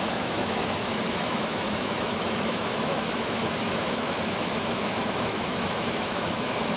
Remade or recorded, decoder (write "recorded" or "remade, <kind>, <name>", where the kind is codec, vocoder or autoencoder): remade, autoencoder, DAC-VAE